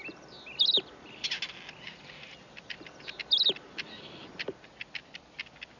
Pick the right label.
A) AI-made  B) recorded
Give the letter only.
B